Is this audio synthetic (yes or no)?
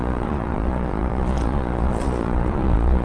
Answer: yes